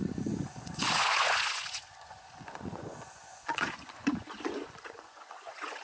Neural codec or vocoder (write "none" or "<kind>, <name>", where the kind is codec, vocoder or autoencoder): vocoder, Vocos